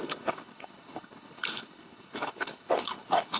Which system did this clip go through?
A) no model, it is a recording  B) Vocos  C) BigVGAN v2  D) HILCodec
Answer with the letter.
D